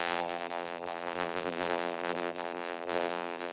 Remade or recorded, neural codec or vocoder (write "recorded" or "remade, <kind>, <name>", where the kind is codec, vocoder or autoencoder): remade, vocoder, BigVGAN v2